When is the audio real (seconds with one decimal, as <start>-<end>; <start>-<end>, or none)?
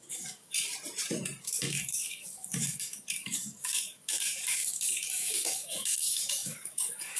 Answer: 0.7-1.4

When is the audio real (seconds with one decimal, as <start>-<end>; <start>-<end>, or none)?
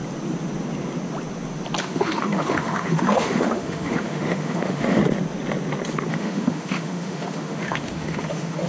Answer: 0.0-1.8; 5.0-6.1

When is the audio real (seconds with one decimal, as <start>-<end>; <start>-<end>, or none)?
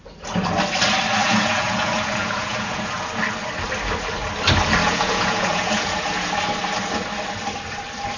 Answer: 0.0-1.2; 3.2-4.8; 6.3-8.2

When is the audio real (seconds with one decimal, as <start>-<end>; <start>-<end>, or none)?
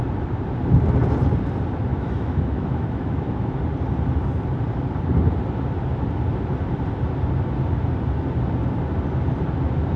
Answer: 0.0-1.9; 3.6-10.0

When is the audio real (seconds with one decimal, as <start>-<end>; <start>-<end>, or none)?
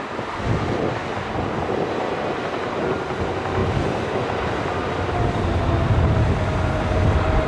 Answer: 0.0-7.5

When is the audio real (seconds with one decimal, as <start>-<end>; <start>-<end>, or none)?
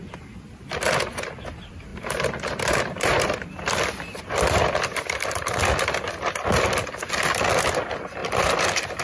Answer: 0.0-1.9; 7.1-8.2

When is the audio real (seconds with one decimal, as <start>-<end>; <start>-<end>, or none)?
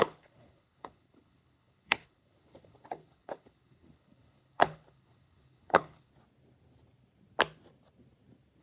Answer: 6.1-8.6